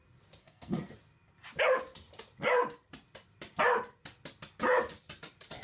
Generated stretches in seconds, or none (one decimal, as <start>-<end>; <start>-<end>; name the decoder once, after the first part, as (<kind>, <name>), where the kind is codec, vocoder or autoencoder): 0.4-0.9 (codec, SNAC)